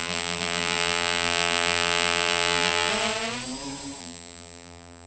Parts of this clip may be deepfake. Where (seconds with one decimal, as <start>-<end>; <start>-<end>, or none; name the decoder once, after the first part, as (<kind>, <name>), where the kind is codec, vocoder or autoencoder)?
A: 0.0-2.9 (vocoder, BigVGAN v2); 4.0-5.1

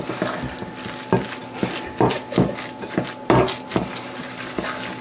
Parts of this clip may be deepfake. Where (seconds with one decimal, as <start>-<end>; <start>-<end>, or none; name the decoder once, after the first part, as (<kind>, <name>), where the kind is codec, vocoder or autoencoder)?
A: none

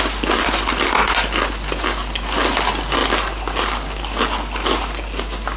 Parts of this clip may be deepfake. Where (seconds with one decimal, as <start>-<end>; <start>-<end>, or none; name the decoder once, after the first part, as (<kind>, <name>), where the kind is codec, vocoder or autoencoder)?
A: none

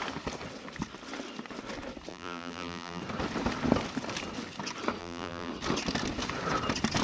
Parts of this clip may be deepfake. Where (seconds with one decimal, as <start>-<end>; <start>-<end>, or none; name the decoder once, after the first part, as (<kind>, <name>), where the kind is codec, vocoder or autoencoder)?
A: 2.1-3.0 (vocoder, BigVGAN v2); 5.0-5.5

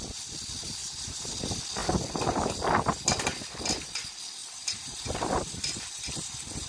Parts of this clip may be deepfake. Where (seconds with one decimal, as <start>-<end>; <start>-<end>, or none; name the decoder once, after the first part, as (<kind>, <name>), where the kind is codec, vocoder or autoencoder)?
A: 0.8-1.3 (vocoder, BigVGAN v2); 4.4-5.8

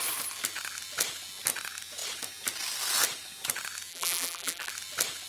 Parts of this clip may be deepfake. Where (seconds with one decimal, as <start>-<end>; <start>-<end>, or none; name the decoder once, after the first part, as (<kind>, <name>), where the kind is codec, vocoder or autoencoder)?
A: 3.9-4.7 (vocoder, BigVGAN v2)